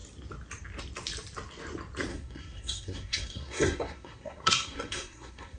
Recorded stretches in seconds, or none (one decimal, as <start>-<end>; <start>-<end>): 0.0-2.1